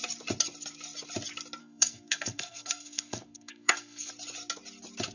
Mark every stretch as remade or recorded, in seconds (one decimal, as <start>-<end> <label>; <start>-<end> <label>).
0.0-1.6 recorded; 1.6-4.1 remade; 4.1-5.1 recorded